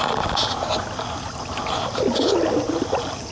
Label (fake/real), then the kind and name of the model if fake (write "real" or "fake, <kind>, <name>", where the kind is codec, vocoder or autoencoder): real